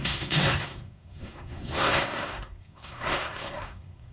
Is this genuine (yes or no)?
no